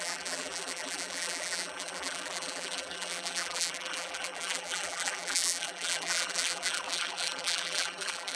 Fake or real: fake